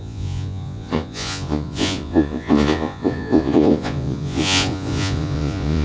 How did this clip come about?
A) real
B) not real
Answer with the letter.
B